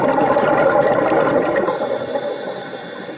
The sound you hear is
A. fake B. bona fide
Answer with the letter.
A